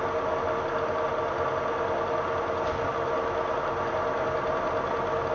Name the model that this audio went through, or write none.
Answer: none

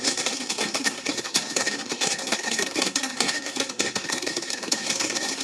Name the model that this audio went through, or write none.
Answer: codec, SNAC